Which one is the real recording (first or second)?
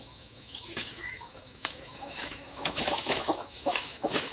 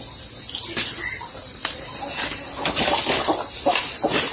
second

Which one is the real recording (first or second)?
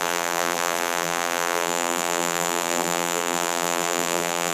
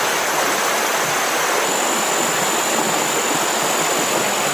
second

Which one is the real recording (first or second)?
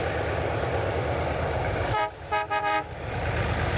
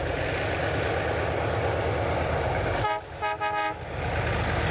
second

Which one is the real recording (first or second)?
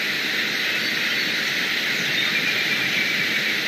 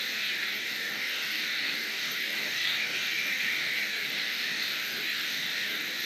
first